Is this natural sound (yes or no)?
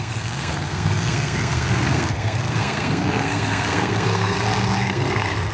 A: no